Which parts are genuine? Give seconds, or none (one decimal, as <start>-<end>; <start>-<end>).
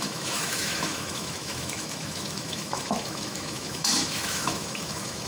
none